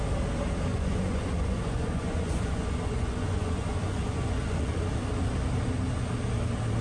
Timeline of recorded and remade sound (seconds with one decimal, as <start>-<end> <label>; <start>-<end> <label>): 0.0-0.7 recorded; 0.7-4.8 remade; 4.8-6.8 recorded